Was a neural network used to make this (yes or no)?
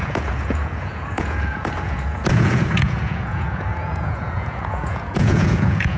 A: yes